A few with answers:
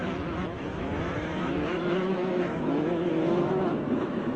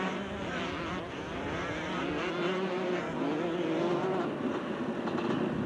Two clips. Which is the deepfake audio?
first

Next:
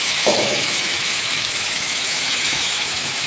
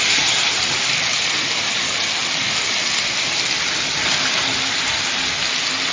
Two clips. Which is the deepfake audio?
first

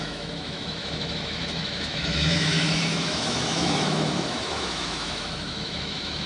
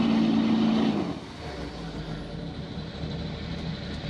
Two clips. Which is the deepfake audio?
first